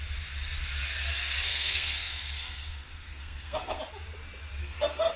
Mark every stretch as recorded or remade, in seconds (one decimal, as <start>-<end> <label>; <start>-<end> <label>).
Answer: 0.0-1.5 recorded; 1.5-3.8 remade; 3.8-4.6 recorded; 4.6-5.2 remade